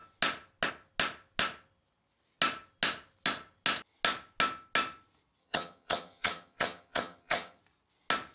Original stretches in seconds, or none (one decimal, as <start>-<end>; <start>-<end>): 0.0-5.4; 7.6-8.3